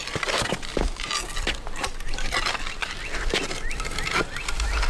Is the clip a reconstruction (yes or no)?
no